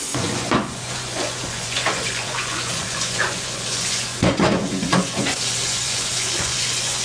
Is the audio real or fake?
fake